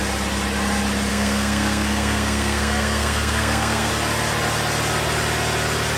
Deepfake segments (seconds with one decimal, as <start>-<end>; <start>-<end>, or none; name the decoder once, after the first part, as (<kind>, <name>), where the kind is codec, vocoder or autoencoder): 1.1-3.9 (codec, SNAC)